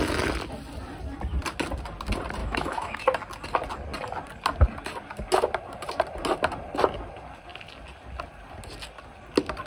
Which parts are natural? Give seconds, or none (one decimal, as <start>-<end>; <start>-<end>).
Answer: 0.0-2.4; 3.0-9.7